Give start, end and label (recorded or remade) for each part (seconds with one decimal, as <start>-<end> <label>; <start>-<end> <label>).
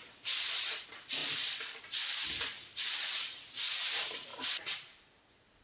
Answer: 0.0-5.6 recorded